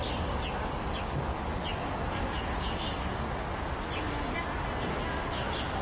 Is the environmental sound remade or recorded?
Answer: recorded